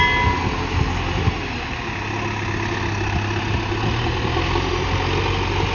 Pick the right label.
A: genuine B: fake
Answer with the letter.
A